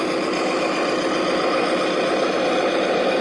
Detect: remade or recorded recorded